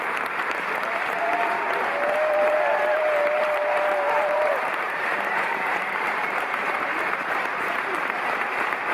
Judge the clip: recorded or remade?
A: remade